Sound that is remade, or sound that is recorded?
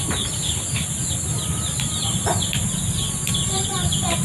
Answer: recorded